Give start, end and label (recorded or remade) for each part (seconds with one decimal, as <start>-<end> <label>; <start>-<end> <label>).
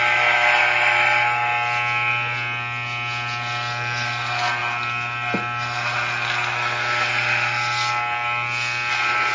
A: 0.0-9.3 recorded